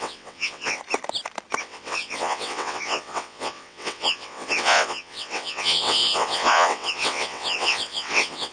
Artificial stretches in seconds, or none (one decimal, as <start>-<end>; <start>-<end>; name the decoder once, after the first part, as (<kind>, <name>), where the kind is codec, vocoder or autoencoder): 0.0-0.8 (vocoder, WaveNeXt); 1.6-8.5

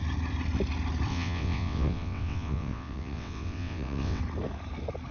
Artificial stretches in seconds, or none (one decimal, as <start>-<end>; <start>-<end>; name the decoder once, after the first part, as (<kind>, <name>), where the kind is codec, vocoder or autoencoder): 1.1-4.2 (vocoder, WaveNeXt)

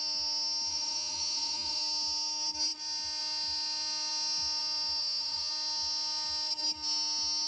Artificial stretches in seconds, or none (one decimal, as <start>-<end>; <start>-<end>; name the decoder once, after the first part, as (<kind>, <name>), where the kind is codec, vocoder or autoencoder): 0.7-1.8 (vocoder, Vocos); 5.0-5.5

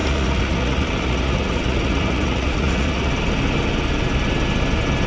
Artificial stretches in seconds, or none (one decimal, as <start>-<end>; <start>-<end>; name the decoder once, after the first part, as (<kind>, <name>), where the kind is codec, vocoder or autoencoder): 0.0-3.1 (vocoder, Vocos)

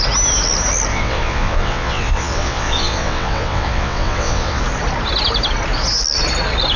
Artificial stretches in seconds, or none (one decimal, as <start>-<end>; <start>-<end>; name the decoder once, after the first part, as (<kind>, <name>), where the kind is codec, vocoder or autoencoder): 0.9-4.6 (vocoder, WaveNeXt)

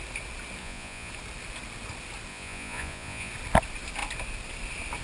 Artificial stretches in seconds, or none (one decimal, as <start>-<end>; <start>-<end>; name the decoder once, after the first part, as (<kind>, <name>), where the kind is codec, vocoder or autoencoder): 0.6-1.1 (vocoder, Vocos); 2.3-3.3

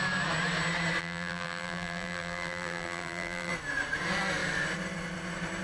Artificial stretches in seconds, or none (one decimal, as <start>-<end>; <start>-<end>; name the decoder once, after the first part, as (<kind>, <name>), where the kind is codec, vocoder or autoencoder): 1.0-3.5 (vocoder, BigVGAN v2)